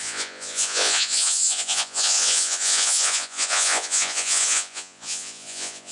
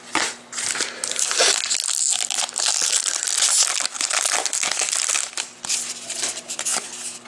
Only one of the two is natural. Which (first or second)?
second